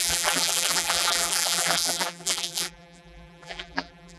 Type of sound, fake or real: fake